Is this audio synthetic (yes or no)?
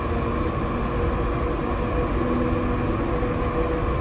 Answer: no